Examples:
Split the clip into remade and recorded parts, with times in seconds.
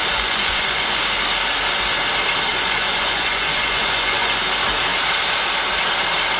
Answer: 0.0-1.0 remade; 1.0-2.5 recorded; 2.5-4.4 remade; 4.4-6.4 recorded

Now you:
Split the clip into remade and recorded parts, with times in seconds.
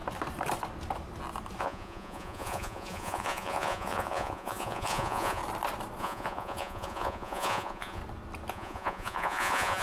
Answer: 0.0-1.6 recorded; 1.6-5.4 remade; 5.4-6.0 recorded; 6.0-8.0 remade; 8.0-8.5 recorded; 8.5-9.8 remade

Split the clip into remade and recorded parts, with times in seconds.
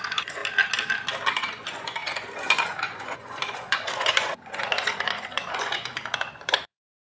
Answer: 0.0-0.4 remade; 0.4-1.4 recorded; 1.4-7.0 remade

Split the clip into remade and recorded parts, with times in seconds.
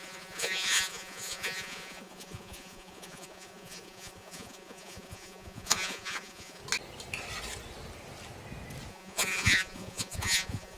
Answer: 0.0-6.6 remade; 6.6-8.9 recorded; 8.9-10.8 remade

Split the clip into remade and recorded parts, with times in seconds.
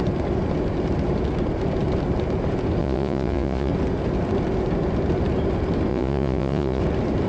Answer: 0.0-2.8 recorded; 2.8-3.7 remade; 3.7-5.9 recorded; 5.9-6.8 remade; 6.8-7.3 recorded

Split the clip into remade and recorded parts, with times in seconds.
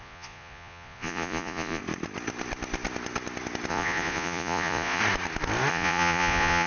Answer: 0.0-1.8 remade; 1.8-3.7 recorded; 3.7-5.0 remade; 5.0-5.7 recorded; 5.7-6.7 remade